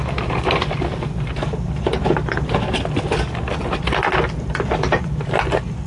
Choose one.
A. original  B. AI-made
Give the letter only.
A